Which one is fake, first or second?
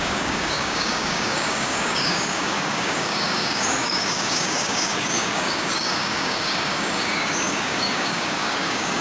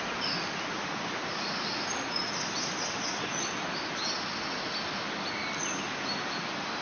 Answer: first